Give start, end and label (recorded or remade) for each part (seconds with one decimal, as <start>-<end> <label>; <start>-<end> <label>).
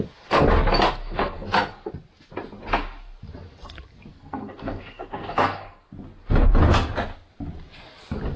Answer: 0.0-1.0 recorded; 1.0-1.9 remade; 1.9-4.1 recorded; 4.1-5.9 remade; 5.9-8.4 recorded